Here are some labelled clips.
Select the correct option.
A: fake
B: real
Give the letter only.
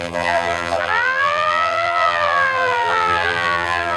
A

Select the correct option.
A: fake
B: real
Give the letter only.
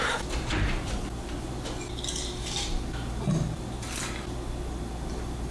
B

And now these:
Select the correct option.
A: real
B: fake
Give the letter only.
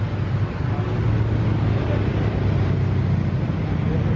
A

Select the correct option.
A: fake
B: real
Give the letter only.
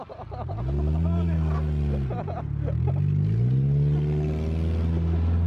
B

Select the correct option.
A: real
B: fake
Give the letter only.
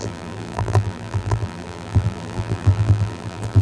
B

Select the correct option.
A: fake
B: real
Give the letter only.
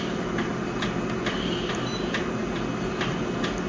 B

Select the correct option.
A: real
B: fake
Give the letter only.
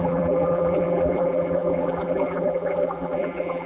B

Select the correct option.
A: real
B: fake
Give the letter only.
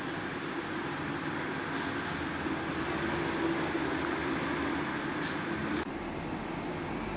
A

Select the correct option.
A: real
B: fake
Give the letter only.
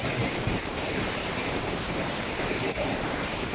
B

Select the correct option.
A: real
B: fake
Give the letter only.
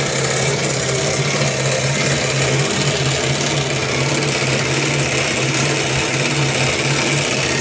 A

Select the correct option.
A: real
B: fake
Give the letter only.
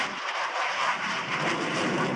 B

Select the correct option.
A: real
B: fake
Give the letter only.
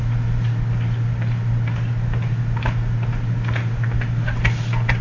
A